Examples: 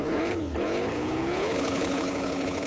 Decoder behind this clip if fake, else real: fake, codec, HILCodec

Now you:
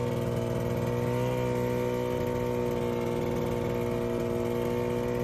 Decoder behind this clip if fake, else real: real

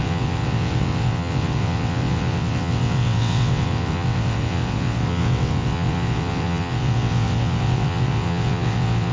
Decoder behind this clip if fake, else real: fake, vocoder, WaveNeXt